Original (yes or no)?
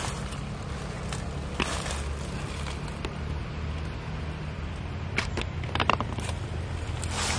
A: yes